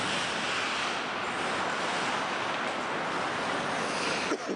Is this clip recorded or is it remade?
recorded